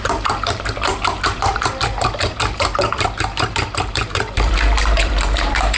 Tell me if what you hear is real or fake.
fake